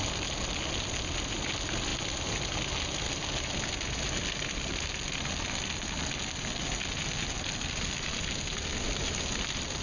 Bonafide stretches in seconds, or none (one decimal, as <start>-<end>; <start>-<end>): 0.0-9.8